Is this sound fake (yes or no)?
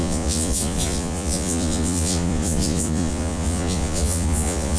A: yes